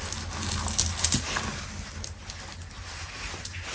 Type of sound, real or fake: real